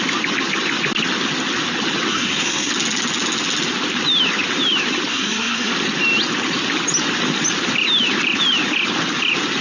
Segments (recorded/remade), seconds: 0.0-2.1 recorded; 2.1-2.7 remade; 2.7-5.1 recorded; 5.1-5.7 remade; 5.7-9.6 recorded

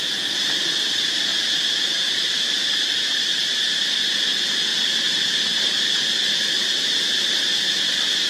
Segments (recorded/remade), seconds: 0.0-1.3 recorded; 1.3-3.9 remade; 3.9-4.7 recorded; 4.7-5.8 remade; 5.8-8.3 recorded

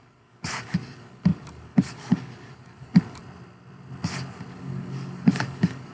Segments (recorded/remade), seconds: 0.0-3.2 remade; 3.2-4.5 recorded; 4.5-5.9 remade

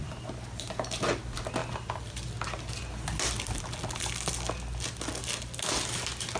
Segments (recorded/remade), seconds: 0.0-6.4 recorded

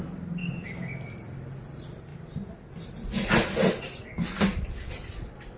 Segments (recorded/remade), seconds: 0.0-5.6 recorded

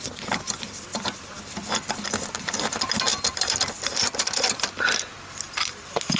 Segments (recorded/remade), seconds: 0.0-0.9 recorded; 0.9-1.4 remade; 1.4-6.2 recorded

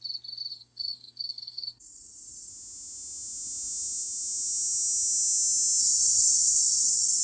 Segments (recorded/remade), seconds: 0.0-0.5 recorded; 0.5-2.5 remade; 2.5-5.8 recorded; 5.8-7.2 remade